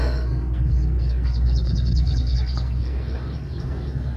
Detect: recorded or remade remade